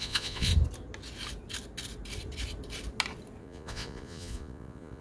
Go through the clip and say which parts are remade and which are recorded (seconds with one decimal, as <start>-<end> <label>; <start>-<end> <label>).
0.0-0.5 remade; 0.5-3.4 recorded; 3.4-5.0 remade